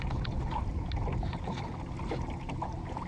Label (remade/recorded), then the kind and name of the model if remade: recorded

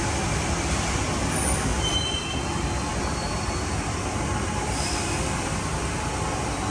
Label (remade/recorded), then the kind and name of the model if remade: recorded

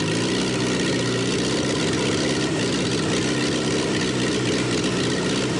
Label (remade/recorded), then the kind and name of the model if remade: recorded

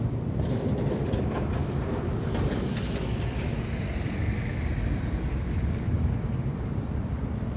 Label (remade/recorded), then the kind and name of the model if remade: remade, vocoder, BigVGAN v2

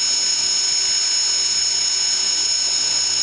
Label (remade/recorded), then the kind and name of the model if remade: recorded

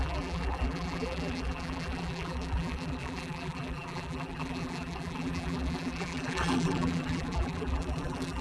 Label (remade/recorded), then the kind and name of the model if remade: remade, vocoder, BigVGAN v2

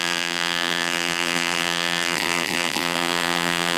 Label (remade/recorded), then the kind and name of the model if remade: remade, vocoder, BigVGAN v2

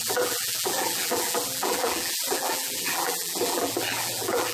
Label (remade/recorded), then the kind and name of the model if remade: remade, vocoder, BigVGAN v2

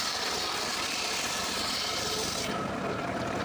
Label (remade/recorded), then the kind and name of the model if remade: remade, vocoder, BigVGAN v2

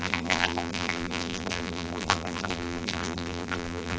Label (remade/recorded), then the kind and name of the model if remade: remade, vocoder, BigVGAN v2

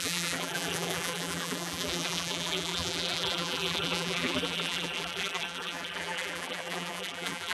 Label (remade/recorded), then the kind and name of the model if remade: remade, vocoder, BigVGAN v2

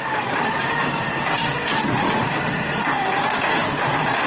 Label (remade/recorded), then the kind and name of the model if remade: remade, vocoder, BigVGAN v2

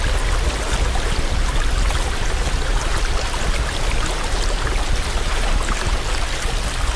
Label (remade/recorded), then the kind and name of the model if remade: recorded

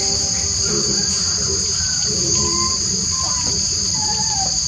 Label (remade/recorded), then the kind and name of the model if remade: remade, vocoder, BigVGAN v2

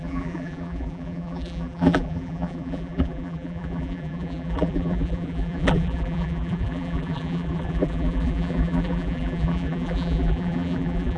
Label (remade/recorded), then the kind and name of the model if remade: remade, vocoder, BigVGAN v2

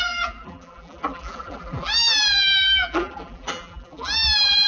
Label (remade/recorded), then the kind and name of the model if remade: remade, vocoder, BigVGAN v2